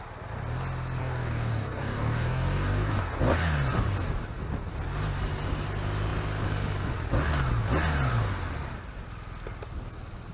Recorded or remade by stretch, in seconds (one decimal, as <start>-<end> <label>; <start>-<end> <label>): 0.0-1.0 recorded; 1.0-3.0 remade; 3.0-10.3 recorded